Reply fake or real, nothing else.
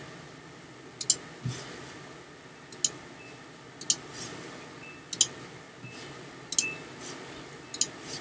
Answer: real